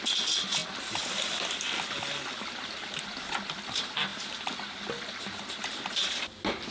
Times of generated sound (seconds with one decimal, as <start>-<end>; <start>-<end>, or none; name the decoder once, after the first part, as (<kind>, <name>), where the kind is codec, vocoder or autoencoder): none